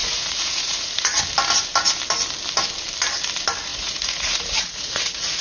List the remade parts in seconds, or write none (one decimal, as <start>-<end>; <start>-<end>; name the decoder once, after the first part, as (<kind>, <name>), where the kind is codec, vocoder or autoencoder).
0.0-1.2 (vocoder, Vocos); 3.7-5.4